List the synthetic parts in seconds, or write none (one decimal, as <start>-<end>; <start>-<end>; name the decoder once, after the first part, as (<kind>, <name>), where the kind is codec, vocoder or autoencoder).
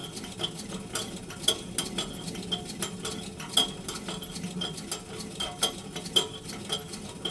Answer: none